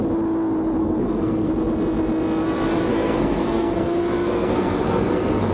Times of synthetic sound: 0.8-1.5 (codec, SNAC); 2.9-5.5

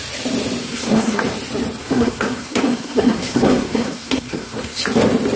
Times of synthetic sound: 0.6-1.2 (codec, SNAC); 1.8-4.8

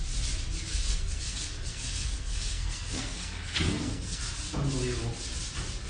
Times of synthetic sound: 0.7-4.2 (codec, SNAC)

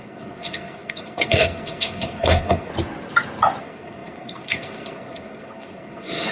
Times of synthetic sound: 0.0-2.7 (codec, SNAC); 3.6-6.3